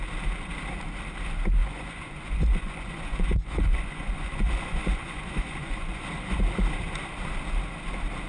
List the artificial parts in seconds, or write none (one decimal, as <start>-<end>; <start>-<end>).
1.6-6.4